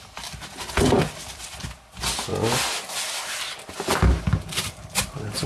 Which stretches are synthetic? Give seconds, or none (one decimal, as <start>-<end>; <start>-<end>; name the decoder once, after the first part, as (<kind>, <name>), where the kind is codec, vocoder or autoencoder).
none